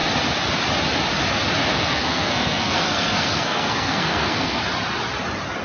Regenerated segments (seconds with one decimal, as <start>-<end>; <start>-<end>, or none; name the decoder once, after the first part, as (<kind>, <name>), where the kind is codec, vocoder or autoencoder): 1.7-4.6 (codec, SNAC)